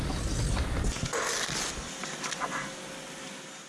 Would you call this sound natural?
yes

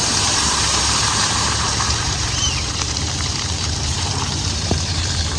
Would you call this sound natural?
no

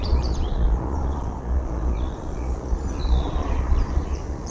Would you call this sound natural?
no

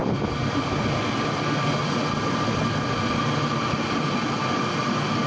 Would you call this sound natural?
yes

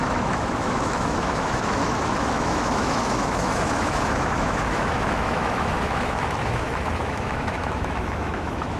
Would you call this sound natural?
no